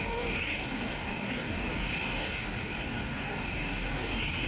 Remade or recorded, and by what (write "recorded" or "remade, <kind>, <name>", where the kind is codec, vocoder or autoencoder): remade, codec, DAC